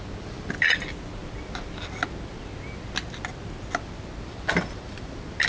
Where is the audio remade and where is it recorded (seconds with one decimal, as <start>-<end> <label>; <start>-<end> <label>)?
0.0-5.5 recorded